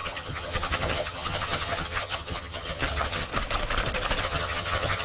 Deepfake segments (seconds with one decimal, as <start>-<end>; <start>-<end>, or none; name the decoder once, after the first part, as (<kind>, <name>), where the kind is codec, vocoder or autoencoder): 0.0-3.3 (vocoder, HiFi-GAN); 4.2-5.0